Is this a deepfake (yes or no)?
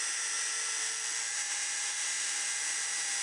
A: no